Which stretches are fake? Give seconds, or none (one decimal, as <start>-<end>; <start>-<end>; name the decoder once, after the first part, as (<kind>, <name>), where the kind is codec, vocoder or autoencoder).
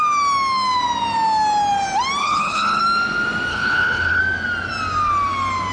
2.2-2.8 (codec, HILCodec); 3.5-4.2